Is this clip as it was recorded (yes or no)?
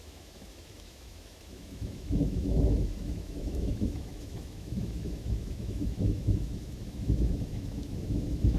no